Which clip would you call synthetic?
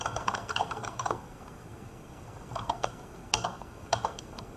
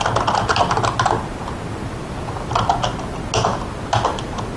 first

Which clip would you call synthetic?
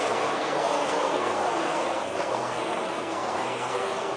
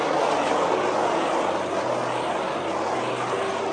first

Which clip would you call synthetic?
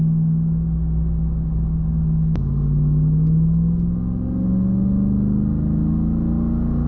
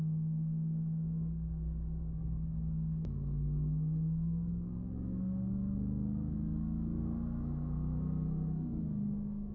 second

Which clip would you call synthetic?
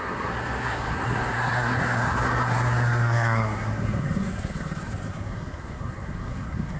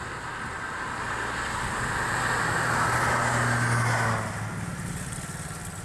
first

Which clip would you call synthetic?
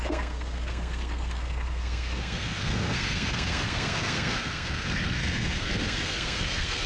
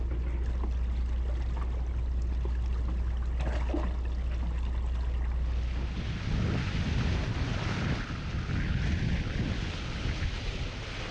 first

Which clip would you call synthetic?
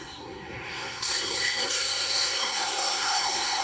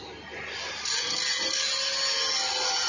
first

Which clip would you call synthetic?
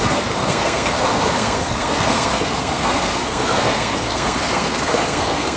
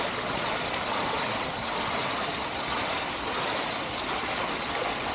first